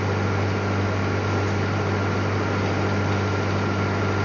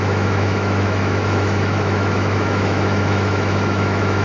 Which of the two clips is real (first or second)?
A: first